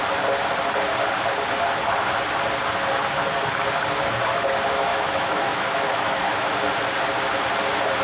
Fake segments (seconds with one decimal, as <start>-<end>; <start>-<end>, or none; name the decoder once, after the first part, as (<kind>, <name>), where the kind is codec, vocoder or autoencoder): 4.9-6.5 (autoencoder, DAC-VAE)